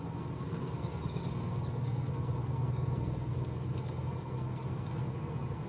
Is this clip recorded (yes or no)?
no